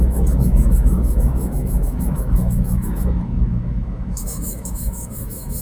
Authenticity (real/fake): fake